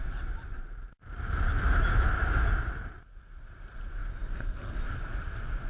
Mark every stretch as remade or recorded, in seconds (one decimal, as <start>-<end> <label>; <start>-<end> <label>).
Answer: 0.0-5.7 recorded